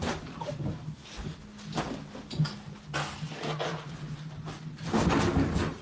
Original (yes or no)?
yes